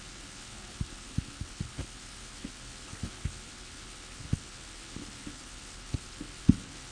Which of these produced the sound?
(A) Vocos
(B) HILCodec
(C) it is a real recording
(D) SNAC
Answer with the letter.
B